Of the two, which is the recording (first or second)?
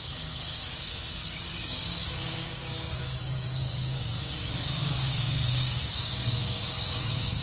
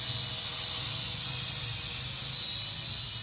second